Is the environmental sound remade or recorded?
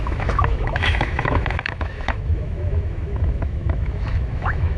remade